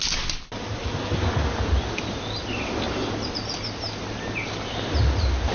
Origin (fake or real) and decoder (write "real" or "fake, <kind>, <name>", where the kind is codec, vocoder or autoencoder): real